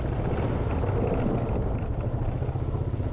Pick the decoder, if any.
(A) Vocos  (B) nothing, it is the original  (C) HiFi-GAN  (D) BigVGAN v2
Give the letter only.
B